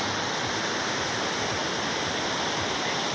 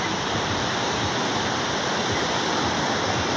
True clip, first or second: first